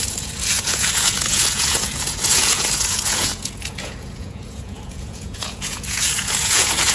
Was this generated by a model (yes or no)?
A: yes